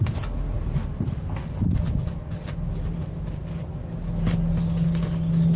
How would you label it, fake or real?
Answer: real